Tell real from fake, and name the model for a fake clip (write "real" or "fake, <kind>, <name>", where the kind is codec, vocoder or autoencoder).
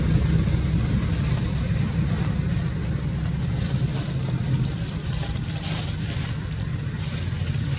real